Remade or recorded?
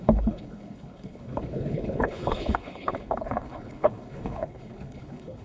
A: remade